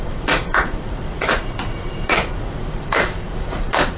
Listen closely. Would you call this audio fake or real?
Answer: fake